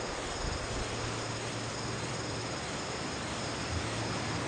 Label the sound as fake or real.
real